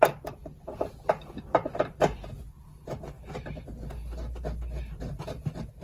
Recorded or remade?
recorded